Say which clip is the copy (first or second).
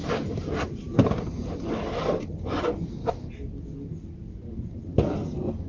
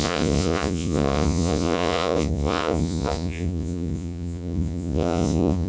second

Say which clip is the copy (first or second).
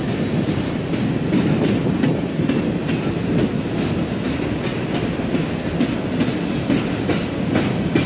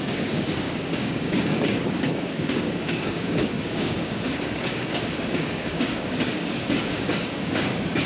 second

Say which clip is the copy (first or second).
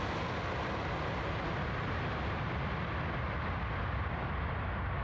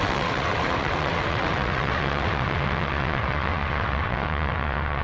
second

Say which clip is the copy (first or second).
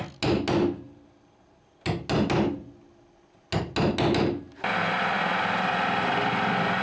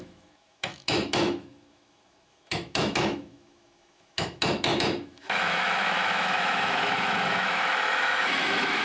second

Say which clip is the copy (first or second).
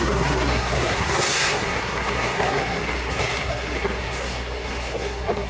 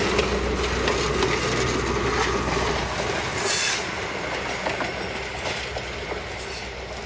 first